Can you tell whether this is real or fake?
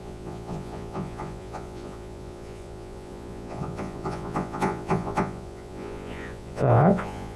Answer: fake